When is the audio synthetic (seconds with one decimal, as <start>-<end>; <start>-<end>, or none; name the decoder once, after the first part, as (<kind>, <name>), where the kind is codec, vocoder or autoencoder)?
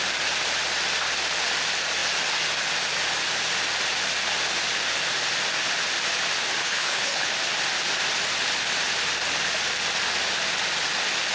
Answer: 6.6-7.3 (codec, HILCodec)